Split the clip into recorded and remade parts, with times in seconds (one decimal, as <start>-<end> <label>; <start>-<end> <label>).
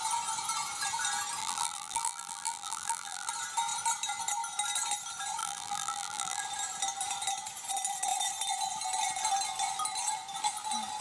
0.0-1.4 recorded; 1.4-3.3 remade; 3.3-5.4 recorded; 5.4-6.4 remade; 6.4-11.0 recorded